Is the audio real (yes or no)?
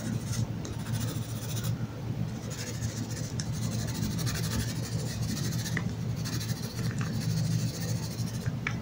yes